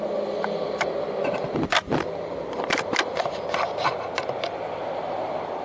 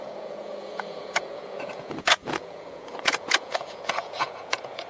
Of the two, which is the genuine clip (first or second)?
first